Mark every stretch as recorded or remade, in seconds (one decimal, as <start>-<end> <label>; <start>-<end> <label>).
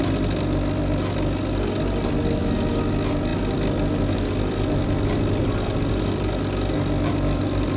0.0-7.8 recorded